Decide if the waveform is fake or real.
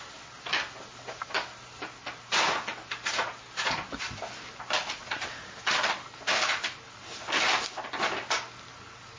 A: real